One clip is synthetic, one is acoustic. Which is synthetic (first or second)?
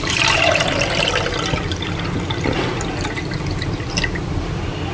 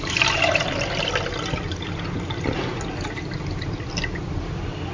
first